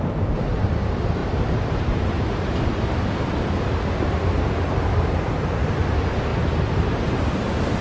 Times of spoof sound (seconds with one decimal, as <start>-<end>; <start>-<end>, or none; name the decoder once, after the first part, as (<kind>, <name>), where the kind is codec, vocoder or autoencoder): 0.0-6.3 (vocoder, BigVGAN v2); 6.9-7.8